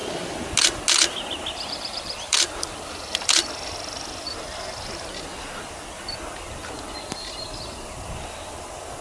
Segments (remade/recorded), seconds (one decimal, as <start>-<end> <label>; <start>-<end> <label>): 0.0-1.4 recorded; 1.4-3.2 remade; 3.2-9.0 recorded